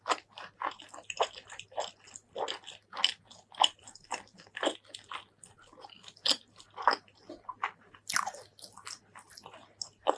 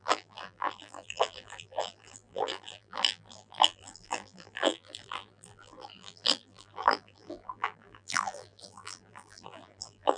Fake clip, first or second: second